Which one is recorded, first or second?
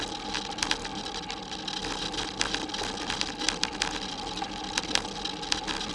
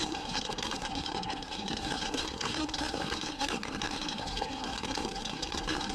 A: first